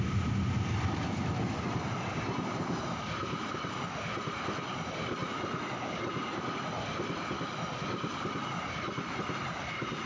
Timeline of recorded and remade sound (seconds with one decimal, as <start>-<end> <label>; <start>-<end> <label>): 0.0-5.2 remade; 5.2-6.7 recorded; 6.7-10.1 remade